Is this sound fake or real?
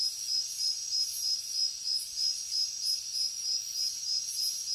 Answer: real